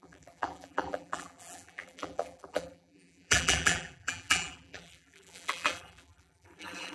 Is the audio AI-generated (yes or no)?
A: yes